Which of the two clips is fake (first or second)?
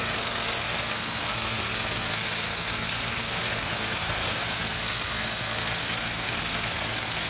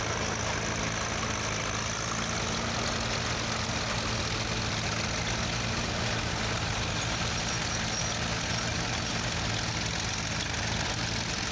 first